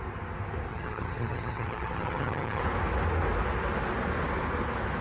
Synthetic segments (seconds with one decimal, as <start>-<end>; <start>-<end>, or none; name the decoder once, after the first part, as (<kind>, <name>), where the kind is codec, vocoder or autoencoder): 0.7-2.6 (vocoder, HiFi-GAN)